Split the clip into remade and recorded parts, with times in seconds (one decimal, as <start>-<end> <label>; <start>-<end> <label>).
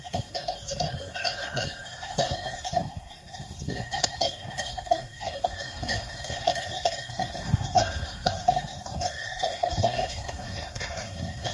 0.0-11.5 remade